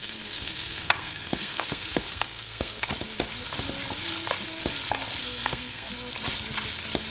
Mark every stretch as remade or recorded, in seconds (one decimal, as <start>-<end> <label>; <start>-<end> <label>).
0.0-2.9 remade; 2.9-5.2 recorded; 5.2-5.9 remade; 5.9-7.1 recorded